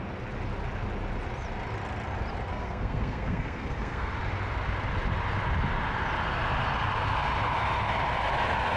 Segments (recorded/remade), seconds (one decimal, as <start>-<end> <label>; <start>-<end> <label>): 0.0-2.5 recorded; 2.5-4.1 remade; 4.1-8.8 recorded